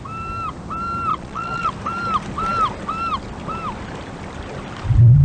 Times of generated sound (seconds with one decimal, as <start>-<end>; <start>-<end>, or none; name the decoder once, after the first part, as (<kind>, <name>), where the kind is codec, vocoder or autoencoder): 1.1-1.7 (vocoder, Vocos)